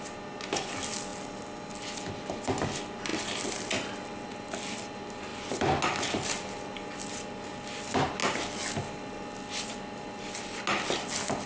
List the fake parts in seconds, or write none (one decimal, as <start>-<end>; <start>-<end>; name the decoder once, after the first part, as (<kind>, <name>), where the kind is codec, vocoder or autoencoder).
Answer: none